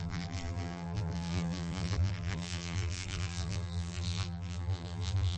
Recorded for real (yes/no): no